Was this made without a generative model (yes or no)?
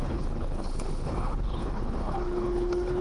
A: no